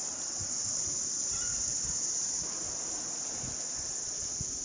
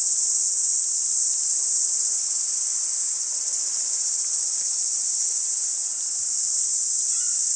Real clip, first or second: first